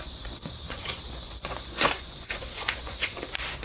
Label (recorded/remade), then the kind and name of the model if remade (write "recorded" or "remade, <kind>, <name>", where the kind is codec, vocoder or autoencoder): remade, vocoder, Vocos